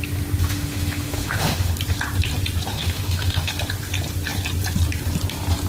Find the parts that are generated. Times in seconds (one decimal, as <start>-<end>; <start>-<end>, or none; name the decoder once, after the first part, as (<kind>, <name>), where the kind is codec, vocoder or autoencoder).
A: 0.4-1.7 (autoencoder, DAC-VAE); 2.7-3.5